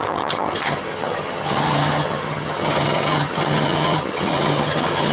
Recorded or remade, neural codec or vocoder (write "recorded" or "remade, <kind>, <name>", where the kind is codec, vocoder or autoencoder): remade, vocoder, HiFi-GAN